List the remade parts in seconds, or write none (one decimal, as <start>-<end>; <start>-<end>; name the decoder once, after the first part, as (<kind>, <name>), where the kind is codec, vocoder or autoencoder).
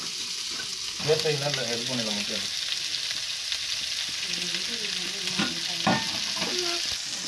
none